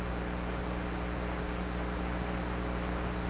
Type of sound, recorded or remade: recorded